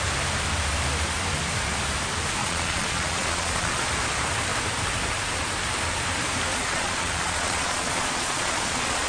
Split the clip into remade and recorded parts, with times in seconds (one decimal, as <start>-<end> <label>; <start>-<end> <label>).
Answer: 0.0-2.4 recorded; 2.4-3.9 remade; 3.9-6.5 recorded; 6.5-9.1 remade